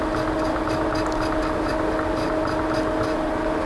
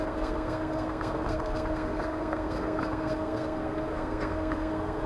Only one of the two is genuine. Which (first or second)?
first